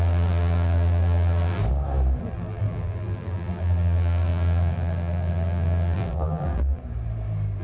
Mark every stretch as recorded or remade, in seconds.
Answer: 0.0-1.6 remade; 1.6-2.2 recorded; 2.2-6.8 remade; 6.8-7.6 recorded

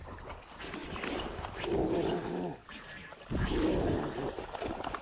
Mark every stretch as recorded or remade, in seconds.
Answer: 0.0-5.0 recorded

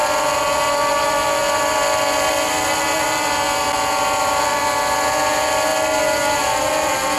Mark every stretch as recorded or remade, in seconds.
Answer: 0.0-7.2 recorded